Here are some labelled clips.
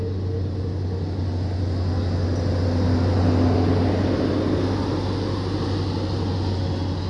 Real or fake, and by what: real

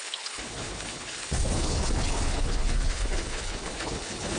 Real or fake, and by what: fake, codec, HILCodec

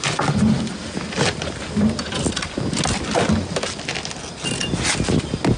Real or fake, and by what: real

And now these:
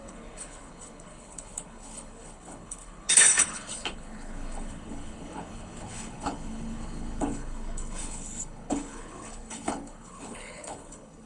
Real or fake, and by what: fake, codec, HILCodec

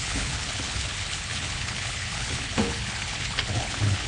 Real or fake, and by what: fake, codec, HILCodec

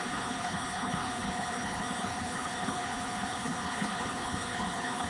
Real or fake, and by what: fake, codec, HILCodec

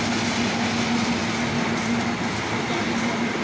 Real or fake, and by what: real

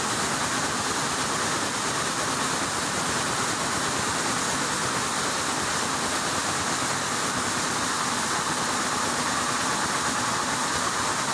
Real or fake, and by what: real